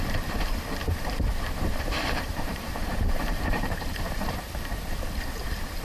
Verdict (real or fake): fake